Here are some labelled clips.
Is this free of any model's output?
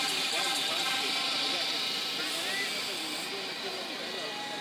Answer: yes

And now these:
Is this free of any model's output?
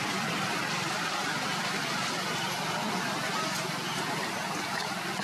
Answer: yes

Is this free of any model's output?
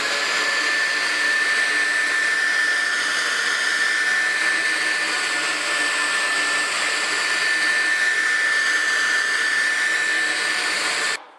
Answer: yes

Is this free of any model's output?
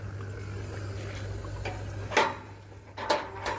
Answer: yes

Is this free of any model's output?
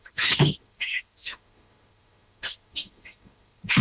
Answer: no